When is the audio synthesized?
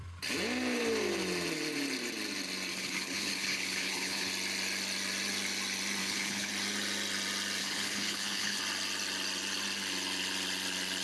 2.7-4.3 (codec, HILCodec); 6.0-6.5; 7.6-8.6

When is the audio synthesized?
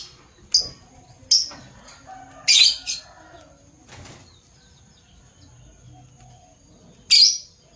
none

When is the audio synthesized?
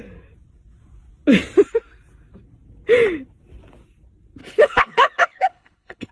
4.4-6.1 (codec, HILCodec)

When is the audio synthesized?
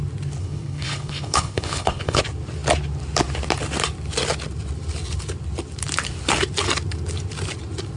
0.4-2.2 (codec, HILCodec)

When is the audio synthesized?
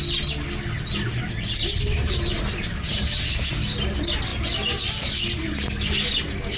none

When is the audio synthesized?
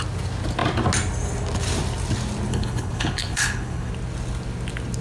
2.5-3.9 (codec, HILCodec)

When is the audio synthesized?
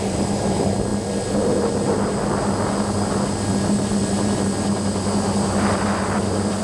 none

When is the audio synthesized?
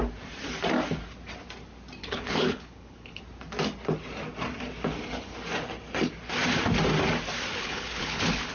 2.0-3.2 (codec, HILCodec); 7.5-8.5